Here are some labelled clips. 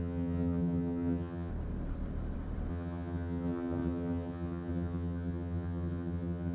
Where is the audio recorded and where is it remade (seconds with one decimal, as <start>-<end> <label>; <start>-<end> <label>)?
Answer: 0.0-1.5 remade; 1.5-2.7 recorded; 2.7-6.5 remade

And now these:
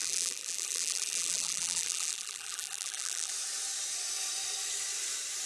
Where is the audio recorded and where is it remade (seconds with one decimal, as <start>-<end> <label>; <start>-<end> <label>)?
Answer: 0.0-3.3 remade; 3.3-5.5 recorded

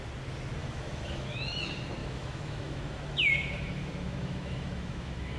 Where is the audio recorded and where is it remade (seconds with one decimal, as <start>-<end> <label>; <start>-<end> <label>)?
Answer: 0.0-0.6 recorded; 0.6-1.6 remade; 1.6-2.0 recorded; 2.0-5.4 remade

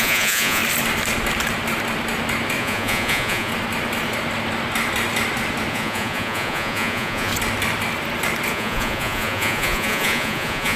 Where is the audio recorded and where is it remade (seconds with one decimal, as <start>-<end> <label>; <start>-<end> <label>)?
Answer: 0.0-0.6 remade; 0.6-2.6 recorded; 2.6-3.5 remade; 3.5-5.7 recorded; 5.7-7.3 remade; 7.3-8.5 recorded; 8.5-10.8 remade

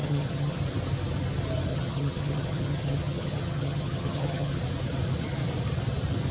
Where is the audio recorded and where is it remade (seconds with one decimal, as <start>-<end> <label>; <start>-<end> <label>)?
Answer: 0.0-0.6 remade; 0.6-1.7 recorded; 1.7-4.6 remade; 4.6-6.3 recorded